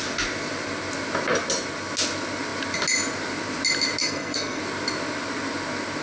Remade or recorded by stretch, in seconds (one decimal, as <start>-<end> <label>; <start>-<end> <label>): 0.0-4.0 recorded; 4.0-4.6 remade; 4.6-6.0 recorded